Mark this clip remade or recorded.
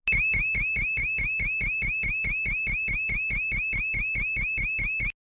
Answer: recorded